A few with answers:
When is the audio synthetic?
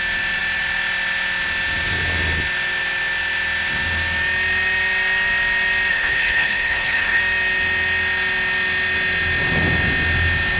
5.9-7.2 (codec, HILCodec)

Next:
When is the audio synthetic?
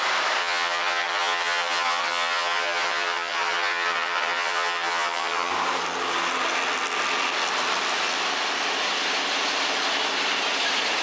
0.4-5.5 (vocoder, HiFi-GAN)